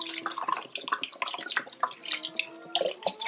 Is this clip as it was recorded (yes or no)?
yes